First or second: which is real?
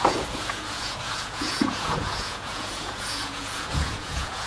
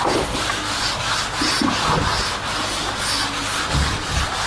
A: second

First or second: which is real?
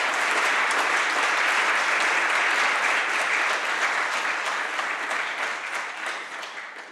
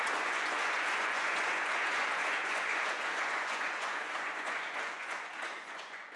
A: first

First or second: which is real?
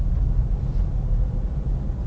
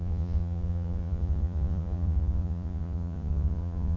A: first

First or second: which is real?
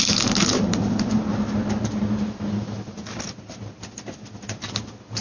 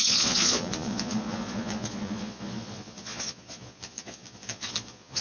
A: first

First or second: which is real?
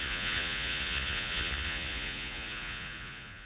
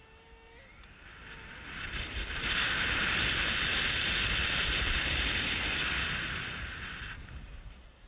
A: second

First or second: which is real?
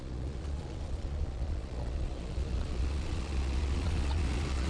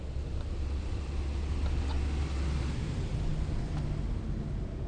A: second